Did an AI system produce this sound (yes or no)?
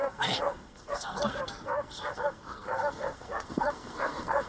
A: yes